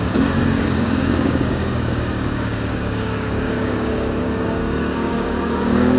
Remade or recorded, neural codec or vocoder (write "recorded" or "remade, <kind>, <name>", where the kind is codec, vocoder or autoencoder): remade, codec, DAC